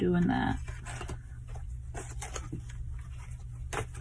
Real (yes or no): yes